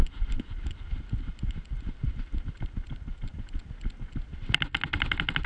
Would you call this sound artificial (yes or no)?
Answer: no